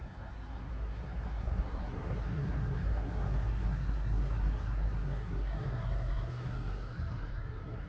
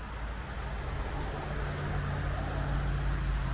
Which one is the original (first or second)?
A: second